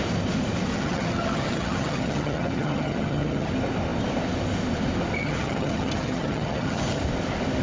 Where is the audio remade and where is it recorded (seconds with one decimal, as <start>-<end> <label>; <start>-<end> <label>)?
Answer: 0.0-0.7 recorded; 0.7-3.5 remade; 3.5-5.2 recorded; 5.2-7.0 remade; 7.0-7.6 recorded